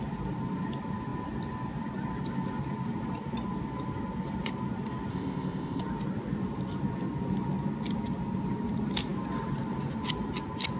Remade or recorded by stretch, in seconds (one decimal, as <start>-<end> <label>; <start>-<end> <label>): 0.0-5.1 recorded; 5.1-5.8 remade; 5.8-10.8 recorded

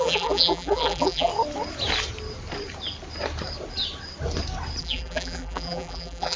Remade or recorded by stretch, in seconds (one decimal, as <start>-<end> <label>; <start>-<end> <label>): 0.0-1.3 remade; 1.3-4.8 recorded; 4.8-6.4 remade

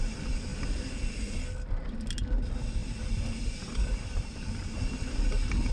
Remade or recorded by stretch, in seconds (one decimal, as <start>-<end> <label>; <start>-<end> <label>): 0.0-2.8 recorded; 2.8-4.3 remade; 4.3-5.7 recorded

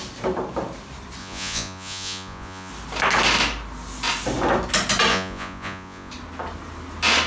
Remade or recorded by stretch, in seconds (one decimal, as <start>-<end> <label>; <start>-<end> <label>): 0.0-1.2 recorded; 1.2-2.7 remade; 2.7-5.1 recorded; 5.1-6.1 remade; 6.1-7.3 recorded

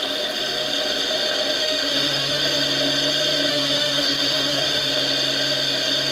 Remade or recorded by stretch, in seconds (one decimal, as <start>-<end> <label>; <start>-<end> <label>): 0.0-1.6 recorded; 1.6-2.4 remade; 2.4-3.5 recorded; 3.5-4.9 remade; 4.9-6.1 recorded

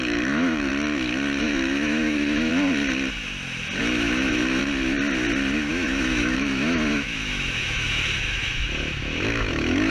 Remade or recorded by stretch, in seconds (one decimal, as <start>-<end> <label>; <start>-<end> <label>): 0.0-0.7 remade; 0.7-1.4 recorded; 1.4-2.5 remade; 2.5-3.8 recorded; 3.8-4.6 remade; 4.6-5.7 recorded; 5.7-9.9 remade